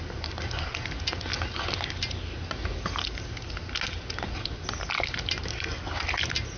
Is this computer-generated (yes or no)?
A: no